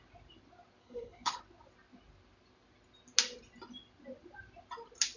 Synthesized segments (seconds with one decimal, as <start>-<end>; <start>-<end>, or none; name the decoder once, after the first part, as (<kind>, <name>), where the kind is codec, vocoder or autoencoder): 0.8-1.4 (codec, HILCodec)